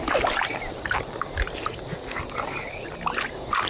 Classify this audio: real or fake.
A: real